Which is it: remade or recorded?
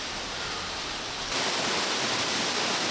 recorded